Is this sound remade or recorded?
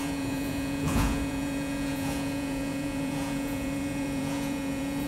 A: remade